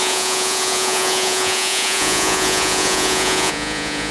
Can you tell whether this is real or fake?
fake